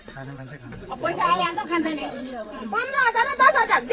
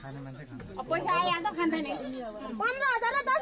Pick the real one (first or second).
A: second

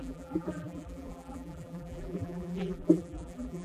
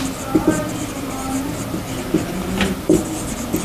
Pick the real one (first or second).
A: second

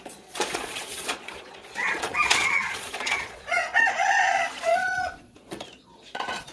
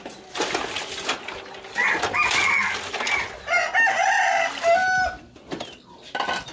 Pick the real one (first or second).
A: second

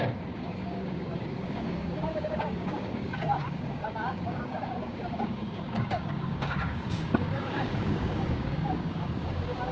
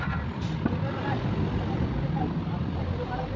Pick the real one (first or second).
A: second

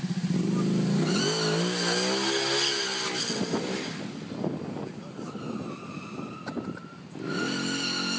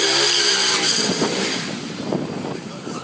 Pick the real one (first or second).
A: first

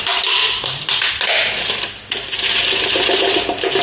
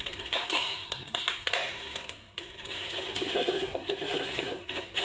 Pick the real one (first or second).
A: first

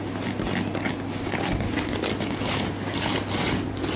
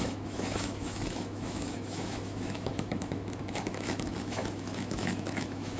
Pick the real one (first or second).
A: first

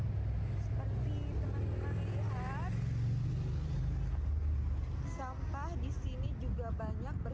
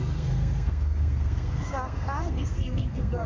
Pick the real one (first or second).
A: first